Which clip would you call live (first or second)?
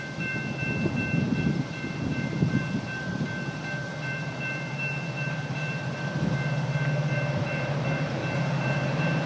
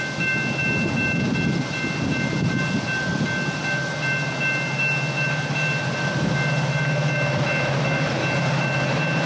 second